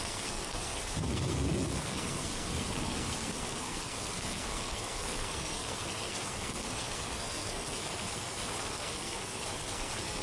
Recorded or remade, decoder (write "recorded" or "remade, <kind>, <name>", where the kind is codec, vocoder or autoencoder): remade, codec, SNAC